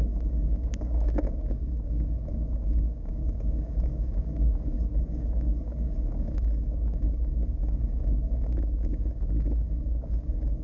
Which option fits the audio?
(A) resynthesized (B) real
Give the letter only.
A